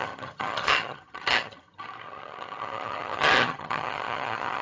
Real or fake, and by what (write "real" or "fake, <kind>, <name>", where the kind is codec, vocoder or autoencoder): fake, vocoder, HiFi-GAN